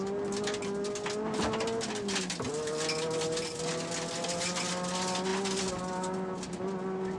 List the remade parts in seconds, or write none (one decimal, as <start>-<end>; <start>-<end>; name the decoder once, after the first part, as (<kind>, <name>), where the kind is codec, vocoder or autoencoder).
none